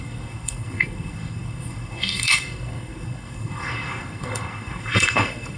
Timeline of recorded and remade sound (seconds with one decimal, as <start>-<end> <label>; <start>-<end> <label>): 0.0-5.6 remade